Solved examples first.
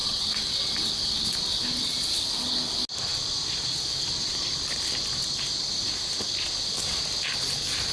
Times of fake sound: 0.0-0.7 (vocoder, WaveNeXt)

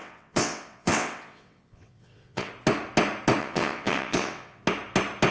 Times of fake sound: 0.0-2.5 (vocoder, WaveNeXt); 3.4-4.6

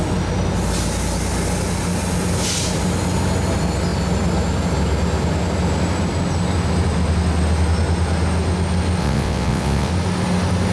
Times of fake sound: 9.0-9.9 (vocoder, WaveNeXt)